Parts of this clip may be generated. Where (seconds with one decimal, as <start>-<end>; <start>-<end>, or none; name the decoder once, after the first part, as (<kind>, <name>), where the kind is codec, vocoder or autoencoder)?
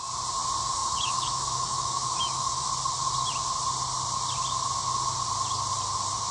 0.8-2.7 (autoencoder, DAC-VAE)